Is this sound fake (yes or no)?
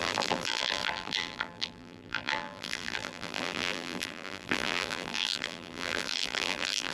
yes